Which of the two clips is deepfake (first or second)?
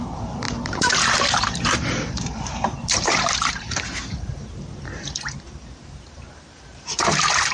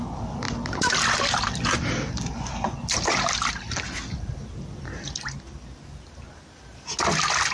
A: first